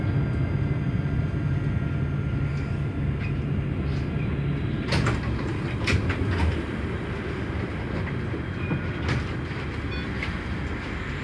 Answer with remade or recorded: recorded